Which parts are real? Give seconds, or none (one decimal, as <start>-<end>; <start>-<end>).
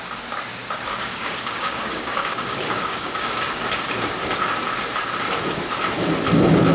0.0-0.6; 4.2-6.7